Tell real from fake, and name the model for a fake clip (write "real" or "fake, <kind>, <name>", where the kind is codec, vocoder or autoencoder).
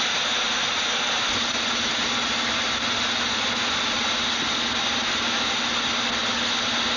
real